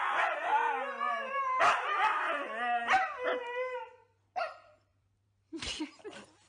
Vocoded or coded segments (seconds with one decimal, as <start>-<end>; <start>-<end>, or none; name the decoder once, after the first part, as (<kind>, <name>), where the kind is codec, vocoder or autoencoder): 3.4-4.2 (vocoder, BigVGAN v2); 4.9-5.8